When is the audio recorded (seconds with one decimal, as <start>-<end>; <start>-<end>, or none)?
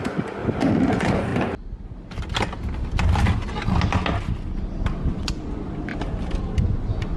0.4-0.9; 1.3-5.1; 5.9-6.6